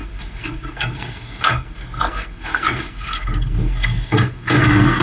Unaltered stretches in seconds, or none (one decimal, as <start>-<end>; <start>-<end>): none